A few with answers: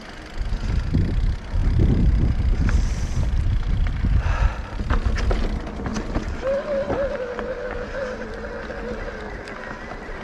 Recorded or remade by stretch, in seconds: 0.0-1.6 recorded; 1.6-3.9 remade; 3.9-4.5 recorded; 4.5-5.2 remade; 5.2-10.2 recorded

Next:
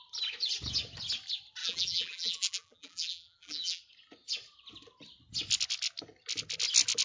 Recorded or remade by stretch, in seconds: 0.0-1.6 recorded; 1.6-3.8 remade; 3.8-7.0 recorded